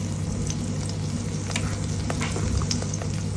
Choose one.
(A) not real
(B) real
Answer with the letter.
B